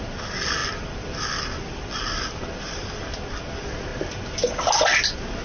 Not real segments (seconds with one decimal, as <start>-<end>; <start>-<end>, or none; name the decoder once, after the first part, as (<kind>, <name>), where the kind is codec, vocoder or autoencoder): 0.6-3.1 (vocoder, BigVGAN v2)